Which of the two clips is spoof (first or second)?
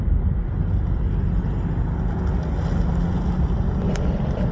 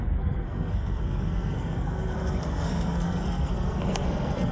second